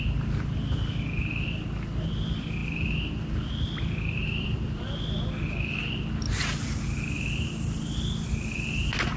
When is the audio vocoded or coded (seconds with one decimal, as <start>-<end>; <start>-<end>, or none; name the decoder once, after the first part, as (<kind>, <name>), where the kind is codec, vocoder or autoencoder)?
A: 4.2-4.9 (vocoder, BigVGAN v2)